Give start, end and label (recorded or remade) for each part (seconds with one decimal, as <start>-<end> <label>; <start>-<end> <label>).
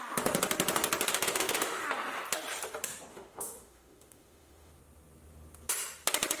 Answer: 0.0-1.1 recorded; 1.1-1.8 remade; 1.8-3.1 recorded; 3.1-4.8 remade; 4.8-6.4 recorded